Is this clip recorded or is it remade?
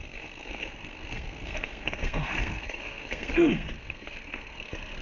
remade